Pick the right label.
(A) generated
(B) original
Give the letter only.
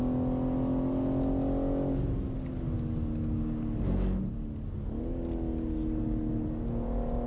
B